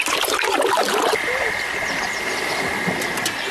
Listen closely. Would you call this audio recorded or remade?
recorded